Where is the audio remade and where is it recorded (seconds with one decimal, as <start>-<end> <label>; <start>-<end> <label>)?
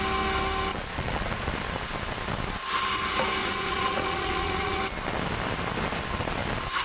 0.0-0.7 recorded; 0.7-1.5 remade; 1.5-3.4 recorded; 3.4-4.8 remade; 4.8-6.8 recorded